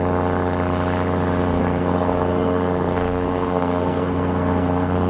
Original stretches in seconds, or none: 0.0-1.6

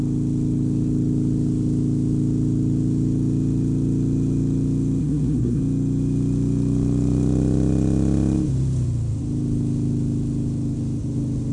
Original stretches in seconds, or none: 0.0-5.0; 5.6-11.5